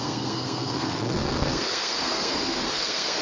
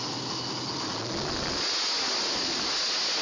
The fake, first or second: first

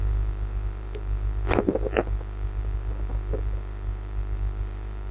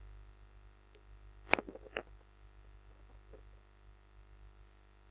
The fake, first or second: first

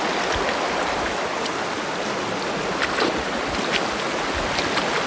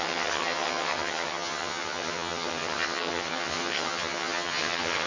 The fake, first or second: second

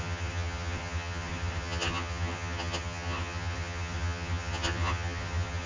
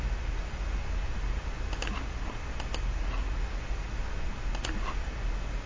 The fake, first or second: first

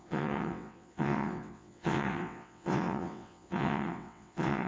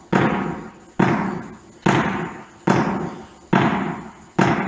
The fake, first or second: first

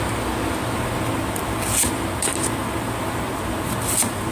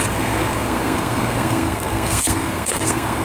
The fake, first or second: second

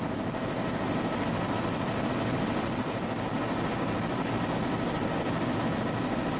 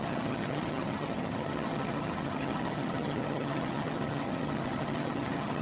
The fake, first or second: second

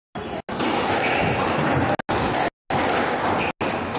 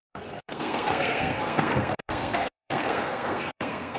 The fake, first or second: second